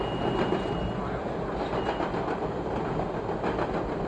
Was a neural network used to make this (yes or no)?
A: no